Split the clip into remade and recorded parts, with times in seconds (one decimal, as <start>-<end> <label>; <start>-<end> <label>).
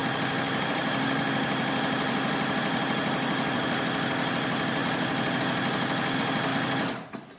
0.0-7.4 recorded